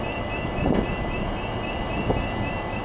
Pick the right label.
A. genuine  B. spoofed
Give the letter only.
A